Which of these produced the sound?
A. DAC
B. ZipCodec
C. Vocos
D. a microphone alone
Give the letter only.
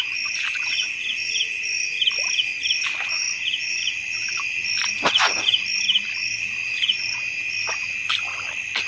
D